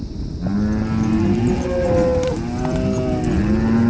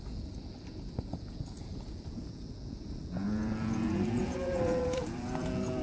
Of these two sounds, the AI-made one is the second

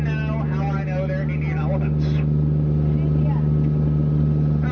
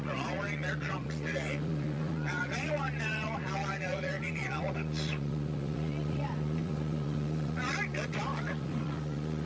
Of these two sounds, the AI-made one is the second